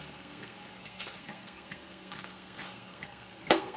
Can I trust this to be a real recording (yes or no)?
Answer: no